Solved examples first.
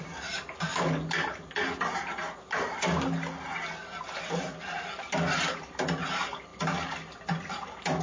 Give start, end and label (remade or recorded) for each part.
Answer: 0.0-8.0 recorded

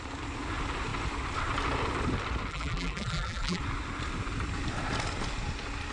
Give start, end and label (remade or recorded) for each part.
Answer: 0.0-2.5 recorded; 2.5-3.6 remade; 3.6-5.9 recorded

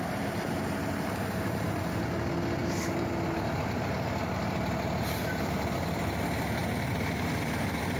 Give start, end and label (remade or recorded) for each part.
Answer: 0.0-8.0 remade